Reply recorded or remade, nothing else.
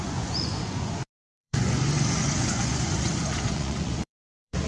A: remade